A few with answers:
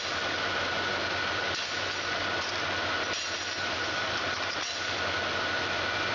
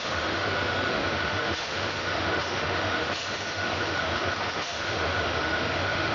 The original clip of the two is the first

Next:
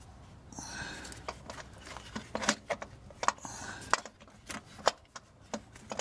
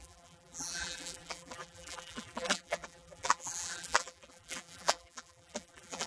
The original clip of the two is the first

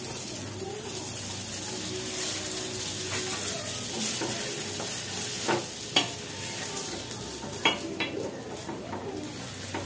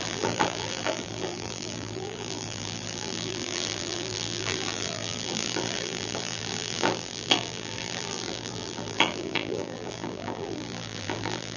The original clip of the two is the first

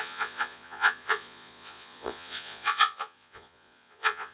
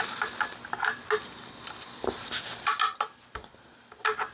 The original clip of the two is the second